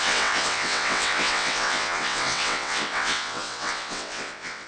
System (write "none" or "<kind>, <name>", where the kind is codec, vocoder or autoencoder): vocoder, WaveNeXt